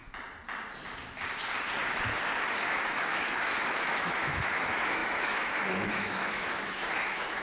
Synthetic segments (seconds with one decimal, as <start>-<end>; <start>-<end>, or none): 2.5-7.4

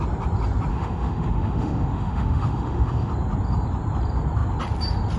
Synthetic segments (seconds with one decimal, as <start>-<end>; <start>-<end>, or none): 0.7-3.1

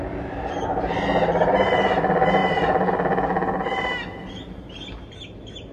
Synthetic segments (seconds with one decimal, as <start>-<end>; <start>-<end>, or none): none

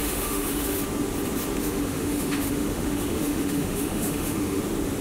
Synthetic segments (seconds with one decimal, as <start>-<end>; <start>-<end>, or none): 0.0-0.8; 1.6-4.6

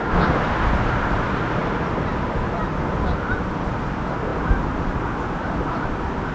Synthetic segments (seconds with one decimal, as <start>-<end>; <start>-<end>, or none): none

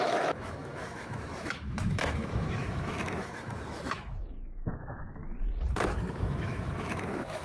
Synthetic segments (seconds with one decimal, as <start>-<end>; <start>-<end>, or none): 0.0-5.2; 5.9-7.4

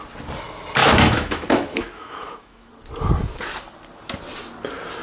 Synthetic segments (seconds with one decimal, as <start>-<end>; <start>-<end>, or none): 0.8-2.7

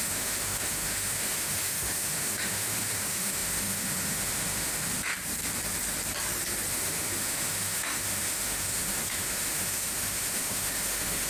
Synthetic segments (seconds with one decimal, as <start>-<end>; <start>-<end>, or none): 0.0-5.1; 6.7-11.3